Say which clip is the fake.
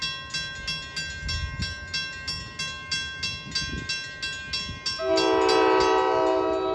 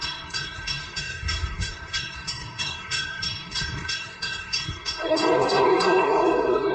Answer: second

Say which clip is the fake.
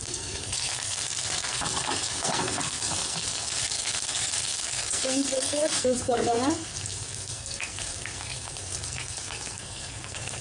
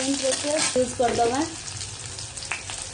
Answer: first